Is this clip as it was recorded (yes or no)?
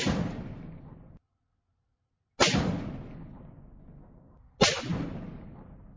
yes